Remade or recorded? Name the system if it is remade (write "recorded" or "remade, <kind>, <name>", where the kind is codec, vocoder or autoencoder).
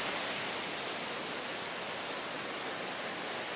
recorded